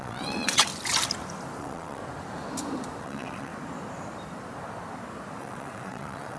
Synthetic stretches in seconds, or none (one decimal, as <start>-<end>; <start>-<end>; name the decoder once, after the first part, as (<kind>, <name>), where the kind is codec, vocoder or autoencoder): 0.0-0.7 (vocoder, WaveNeXt); 1.6-2.0; 3.0-3.5; 5.4-6.4